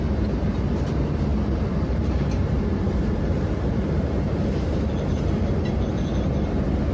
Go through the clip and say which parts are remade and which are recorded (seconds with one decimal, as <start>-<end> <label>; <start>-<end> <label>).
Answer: 0.0-1.3 recorded; 1.3-4.9 remade; 4.9-6.9 recorded